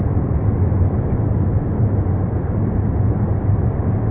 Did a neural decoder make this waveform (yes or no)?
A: no